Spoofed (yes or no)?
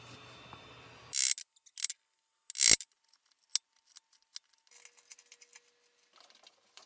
no